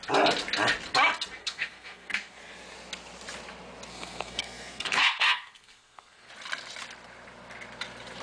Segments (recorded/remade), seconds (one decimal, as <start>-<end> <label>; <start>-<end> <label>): 0.0-1.4 recorded; 1.4-2.4 remade; 2.4-3.9 recorded; 3.9-6.3 remade; 6.3-8.2 recorded